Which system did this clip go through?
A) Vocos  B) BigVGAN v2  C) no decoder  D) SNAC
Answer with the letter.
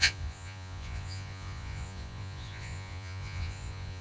A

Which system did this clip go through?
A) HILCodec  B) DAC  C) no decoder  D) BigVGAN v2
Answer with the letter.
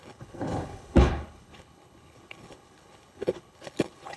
A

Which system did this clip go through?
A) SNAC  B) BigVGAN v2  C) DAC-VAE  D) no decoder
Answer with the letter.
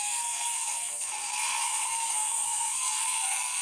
A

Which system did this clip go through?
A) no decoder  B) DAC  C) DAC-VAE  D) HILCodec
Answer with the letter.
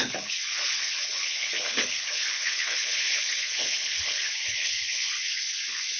D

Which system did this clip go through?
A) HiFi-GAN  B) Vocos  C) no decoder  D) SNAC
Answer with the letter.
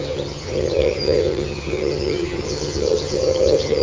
A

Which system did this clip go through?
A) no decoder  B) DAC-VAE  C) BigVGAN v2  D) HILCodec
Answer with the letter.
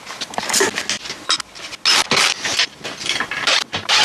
A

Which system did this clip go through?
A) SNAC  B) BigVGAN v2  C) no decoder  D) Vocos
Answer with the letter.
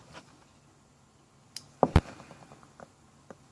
C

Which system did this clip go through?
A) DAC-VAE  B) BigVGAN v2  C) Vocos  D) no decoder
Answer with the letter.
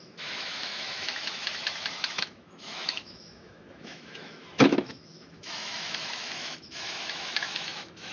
A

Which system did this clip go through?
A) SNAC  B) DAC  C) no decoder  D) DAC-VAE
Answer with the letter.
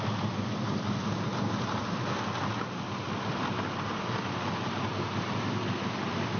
C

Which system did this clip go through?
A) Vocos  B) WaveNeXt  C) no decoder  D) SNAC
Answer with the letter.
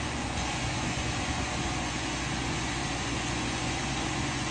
A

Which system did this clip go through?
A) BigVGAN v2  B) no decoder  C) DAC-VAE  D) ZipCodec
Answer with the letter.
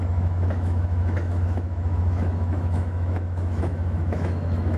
C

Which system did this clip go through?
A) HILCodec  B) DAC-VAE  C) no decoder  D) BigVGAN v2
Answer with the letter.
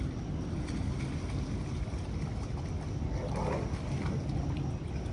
C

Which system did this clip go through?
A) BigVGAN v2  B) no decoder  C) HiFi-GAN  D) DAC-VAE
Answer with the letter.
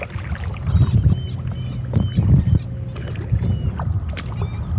B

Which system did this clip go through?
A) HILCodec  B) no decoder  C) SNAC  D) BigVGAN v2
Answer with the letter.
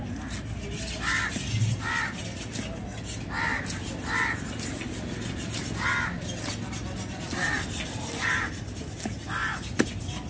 B